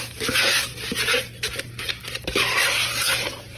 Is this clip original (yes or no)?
yes